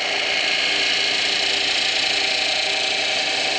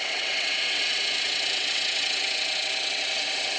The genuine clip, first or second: first